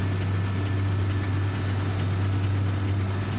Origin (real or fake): real